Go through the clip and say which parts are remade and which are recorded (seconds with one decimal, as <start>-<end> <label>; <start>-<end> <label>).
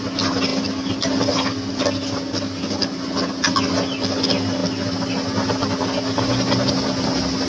0.0-7.5 recorded